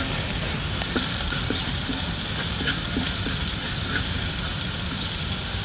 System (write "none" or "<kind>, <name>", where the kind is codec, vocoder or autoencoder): none